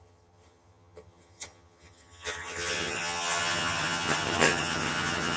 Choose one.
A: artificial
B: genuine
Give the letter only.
A